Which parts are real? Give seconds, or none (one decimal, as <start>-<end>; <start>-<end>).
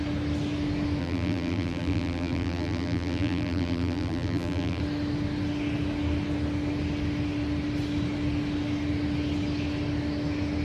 0.0-1.0; 4.8-10.6